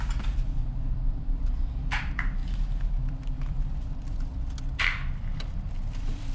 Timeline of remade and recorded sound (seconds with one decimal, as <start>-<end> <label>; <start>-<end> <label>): 0.0-2.4 remade; 2.4-3.1 recorded; 3.1-4.3 remade; 4.3-5.2 recorded; 5.2-6.3 remade